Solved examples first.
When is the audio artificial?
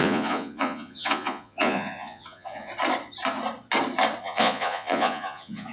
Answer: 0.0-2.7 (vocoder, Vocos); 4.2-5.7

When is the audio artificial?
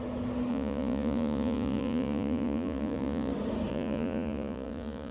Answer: 0.5-3.3 (vocoder, Vocos); 3.7-5.1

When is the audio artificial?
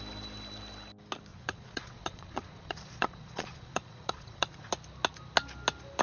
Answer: 1.3-4.7 (vocoder, Vocos)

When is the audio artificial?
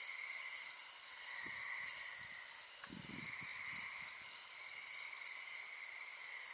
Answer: none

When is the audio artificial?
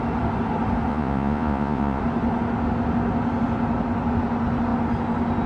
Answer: 0.9-2.0 (vocoder, Vocos)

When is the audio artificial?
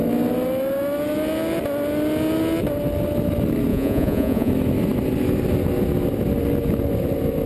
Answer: 3.7-4.5 (vocoder, Vocos)